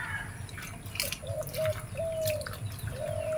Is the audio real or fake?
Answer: real